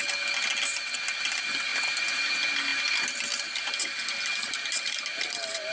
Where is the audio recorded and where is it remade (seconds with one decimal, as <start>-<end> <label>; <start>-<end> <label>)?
0.0-5.7 recorded